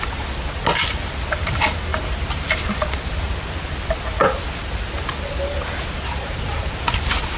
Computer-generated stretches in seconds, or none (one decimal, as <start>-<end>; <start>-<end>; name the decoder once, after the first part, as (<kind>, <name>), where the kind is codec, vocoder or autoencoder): 1.9-2.7 (vocoder, BigVGAN v2)

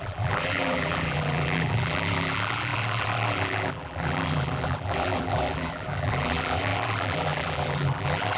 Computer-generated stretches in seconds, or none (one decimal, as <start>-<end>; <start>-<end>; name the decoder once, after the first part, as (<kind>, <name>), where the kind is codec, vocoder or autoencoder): 0.0-8.4 (vocoder, BigVGAN v2)

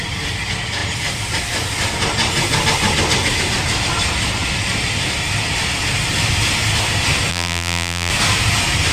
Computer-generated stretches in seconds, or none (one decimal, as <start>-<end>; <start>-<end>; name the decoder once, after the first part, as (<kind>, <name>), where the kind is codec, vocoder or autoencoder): 7.3-8.1 (vocoder, BigVGAN v2)

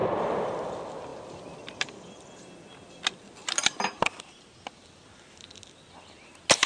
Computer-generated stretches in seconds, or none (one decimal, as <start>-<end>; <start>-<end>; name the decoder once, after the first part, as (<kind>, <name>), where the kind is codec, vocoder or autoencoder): 0.0-0.7 (vocoder, BigVGAN v2); 1.1-4.4

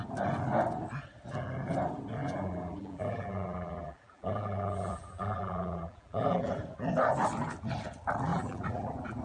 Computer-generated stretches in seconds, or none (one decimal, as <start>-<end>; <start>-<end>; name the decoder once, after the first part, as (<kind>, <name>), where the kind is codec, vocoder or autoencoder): 2.2-6.6 (vocoder, BigVGAN v2); 8.3-9.2

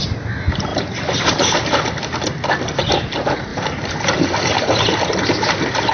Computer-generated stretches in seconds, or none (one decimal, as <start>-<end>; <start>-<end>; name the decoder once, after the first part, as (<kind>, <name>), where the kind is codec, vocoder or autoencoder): 0.7-1.8 (vocoder, BigVGAN v2); 3.5-4.8

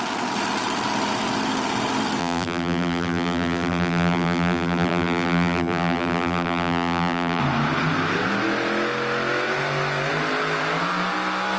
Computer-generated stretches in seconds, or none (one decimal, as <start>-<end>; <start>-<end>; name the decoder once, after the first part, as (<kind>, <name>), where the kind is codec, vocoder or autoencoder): 2.2-7.4 (vocoder, BigVGAN v2)